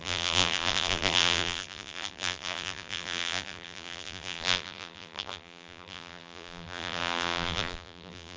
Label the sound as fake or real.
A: fake